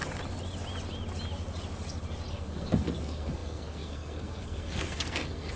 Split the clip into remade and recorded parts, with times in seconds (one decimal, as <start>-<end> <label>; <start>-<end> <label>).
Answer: 0.0-2.3 recorded; 2.3-5.6 remade